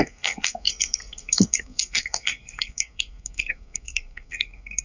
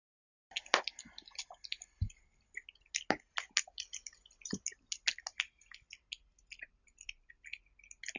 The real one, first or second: second